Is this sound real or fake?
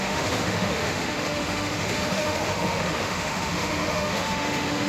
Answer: fake